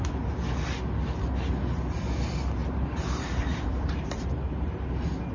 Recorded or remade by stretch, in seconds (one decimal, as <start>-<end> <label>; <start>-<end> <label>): 0.0-2.6 recorded; 2.6-4.7 remade; 4.7-5.3 recorded